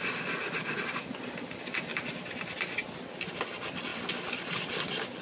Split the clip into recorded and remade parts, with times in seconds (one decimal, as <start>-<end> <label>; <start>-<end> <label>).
0.0-5.2 recorded